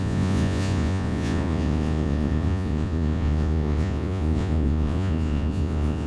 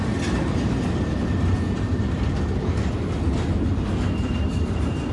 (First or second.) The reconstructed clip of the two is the first